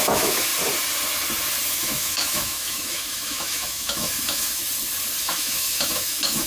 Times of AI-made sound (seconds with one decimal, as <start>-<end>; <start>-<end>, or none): 0.0-0.5; 1.7-4.6; 5.2-6.5